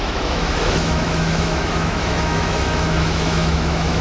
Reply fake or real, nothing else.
fake